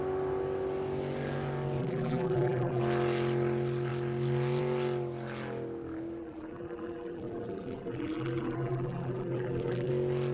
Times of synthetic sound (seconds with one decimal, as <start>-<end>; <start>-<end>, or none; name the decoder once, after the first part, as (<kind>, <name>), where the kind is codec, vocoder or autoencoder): 1.8-2.8 (vocoder, BigVGAN v2); 6.2-9.9